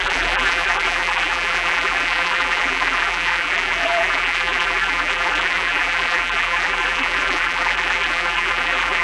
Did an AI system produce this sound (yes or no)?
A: yes